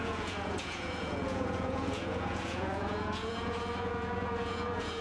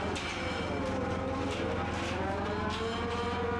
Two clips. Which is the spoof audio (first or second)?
first